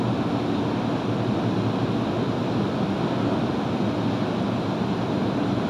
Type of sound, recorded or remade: recorded